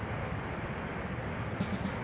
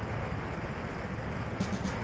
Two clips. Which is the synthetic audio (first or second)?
first